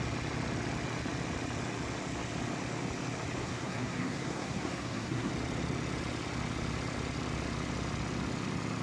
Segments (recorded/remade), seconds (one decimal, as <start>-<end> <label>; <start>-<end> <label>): 0.0-3.4 recorded; 3.4-5.3 remade; 5.3-8.8 recorded